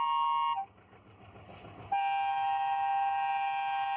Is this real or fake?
real